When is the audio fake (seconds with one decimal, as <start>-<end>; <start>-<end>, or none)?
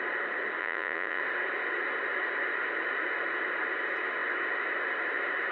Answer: 0.6-1.2